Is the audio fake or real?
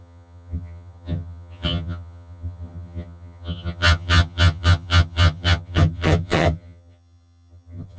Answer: fake